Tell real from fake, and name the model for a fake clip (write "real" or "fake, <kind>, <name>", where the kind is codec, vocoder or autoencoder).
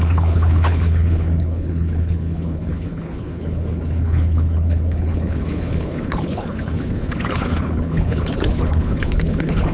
fake, codec, HILCodec